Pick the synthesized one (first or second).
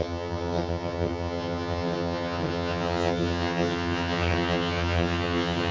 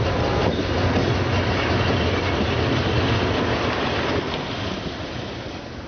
first